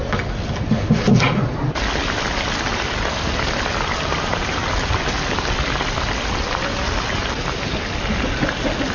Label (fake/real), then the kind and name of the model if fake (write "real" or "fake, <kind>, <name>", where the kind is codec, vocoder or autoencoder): real